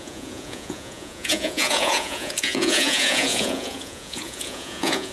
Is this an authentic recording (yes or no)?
no